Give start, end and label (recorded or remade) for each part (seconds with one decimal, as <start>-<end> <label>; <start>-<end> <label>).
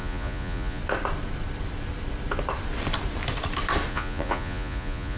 0.0-0.8 remade; 0.8-3.9 recorded; 3.9-5.2 remade